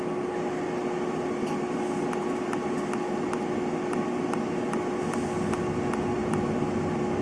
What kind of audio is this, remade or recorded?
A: recorded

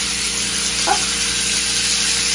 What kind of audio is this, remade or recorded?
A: recorded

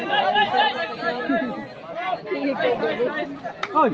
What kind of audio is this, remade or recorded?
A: recorded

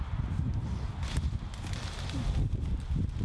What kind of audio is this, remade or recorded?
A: recorded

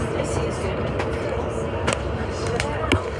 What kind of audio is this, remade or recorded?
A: recorded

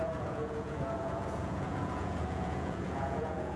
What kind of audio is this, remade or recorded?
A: remade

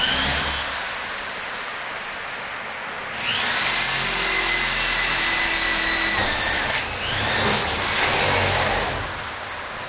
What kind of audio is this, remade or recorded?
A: recorded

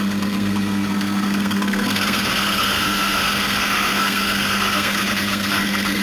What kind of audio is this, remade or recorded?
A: remade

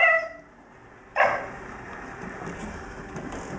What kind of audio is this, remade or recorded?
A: recorded